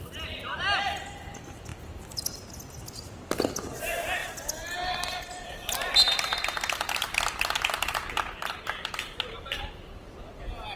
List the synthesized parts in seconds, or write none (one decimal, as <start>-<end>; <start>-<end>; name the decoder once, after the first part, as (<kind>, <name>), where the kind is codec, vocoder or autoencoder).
none